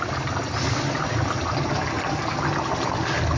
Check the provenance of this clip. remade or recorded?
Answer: recorded